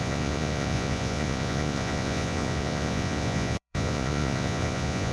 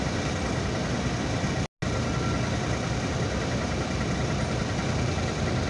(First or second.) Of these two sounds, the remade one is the first